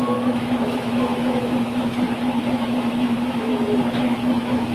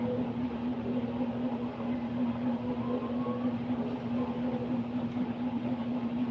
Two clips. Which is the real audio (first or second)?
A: second